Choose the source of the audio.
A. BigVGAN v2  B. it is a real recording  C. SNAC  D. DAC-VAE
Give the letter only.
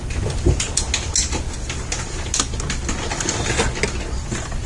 B